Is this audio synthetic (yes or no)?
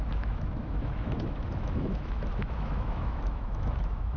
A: yes